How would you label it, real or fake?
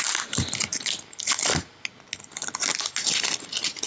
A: real